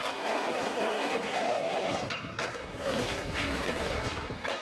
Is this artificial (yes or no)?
yes